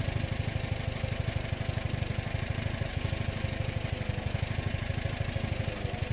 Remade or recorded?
recorded